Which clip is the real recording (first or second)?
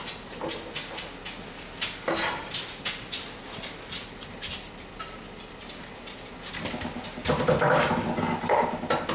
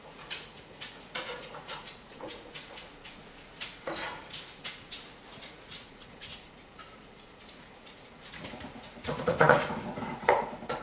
first